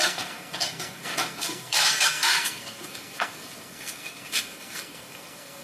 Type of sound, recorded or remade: remade